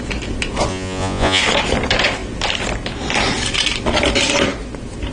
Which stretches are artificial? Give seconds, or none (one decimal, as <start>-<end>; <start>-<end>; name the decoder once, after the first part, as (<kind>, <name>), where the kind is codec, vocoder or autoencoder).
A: 0.7-1.4 (vocoder, Vocos)